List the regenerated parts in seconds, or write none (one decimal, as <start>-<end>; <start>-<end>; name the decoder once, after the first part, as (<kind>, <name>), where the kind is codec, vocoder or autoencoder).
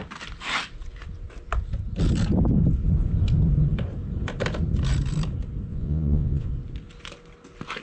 5.7-6.5 (vocoder, Vocos)